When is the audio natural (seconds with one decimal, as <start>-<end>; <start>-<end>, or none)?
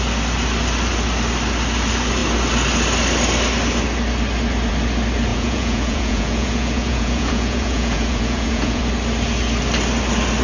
0.0-5.3; 8.8-10.4